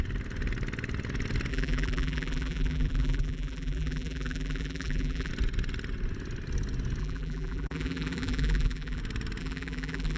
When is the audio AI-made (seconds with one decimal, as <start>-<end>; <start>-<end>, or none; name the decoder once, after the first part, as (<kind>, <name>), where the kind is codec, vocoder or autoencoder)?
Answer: 1.5-5.3 (vocoder, BigVGAN v2); 7.0-9.0; 9.4-10.2